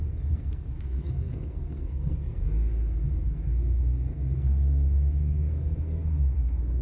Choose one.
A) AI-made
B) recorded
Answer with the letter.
A